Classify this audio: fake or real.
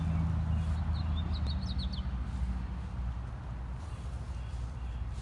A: real